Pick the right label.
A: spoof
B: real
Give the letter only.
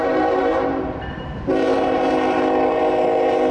A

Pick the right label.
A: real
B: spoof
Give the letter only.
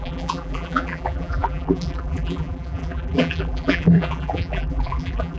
B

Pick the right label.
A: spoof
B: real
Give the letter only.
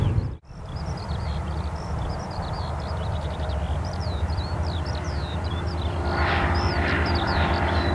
A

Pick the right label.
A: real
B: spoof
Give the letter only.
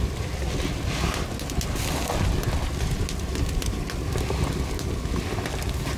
A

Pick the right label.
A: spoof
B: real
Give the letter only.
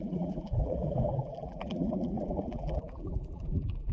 A